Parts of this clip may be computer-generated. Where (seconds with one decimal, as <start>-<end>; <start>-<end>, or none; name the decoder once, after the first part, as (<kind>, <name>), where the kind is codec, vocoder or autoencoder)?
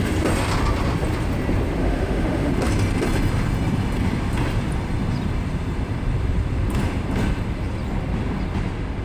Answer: 1.8-2.5 (autoencoder, DAC-VAE)